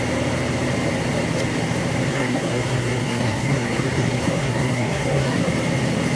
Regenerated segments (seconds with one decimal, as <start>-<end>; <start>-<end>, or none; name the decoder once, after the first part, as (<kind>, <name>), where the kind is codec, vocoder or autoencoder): 2.1-5.5 (codec, SNAC)